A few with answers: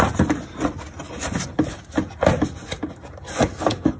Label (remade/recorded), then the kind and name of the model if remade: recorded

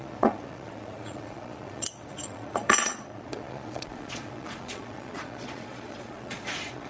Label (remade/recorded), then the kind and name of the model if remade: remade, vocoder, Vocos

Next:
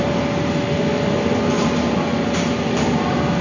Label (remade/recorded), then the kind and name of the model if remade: recorded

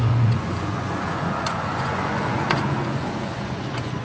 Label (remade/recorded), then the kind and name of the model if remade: remade, vocoder, Vocos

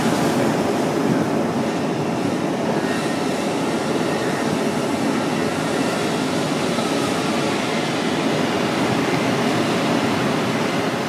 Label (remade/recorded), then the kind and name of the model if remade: recorded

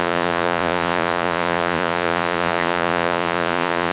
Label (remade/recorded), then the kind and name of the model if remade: remade, vocoder, Vocos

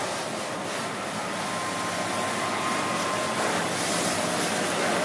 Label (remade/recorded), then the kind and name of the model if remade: recorded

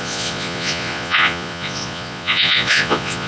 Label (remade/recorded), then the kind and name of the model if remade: remade, vocoder, Vocos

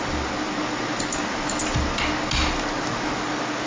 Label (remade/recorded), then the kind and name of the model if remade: recorded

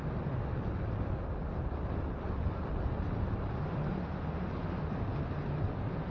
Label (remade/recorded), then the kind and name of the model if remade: recorded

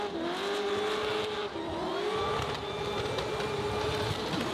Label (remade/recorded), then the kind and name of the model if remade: recorded